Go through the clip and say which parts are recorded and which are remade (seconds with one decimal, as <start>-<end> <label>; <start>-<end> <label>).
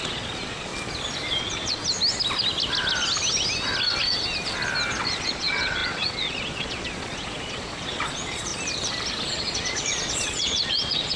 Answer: 0.0-0.7 remade; 0.7-1.4 recorded; 1.4-1.8 remade; 1.8-4.9 recorded; 4.9-8.5 remade; 8.5-9.3 recorded; 9.3-11.2 remade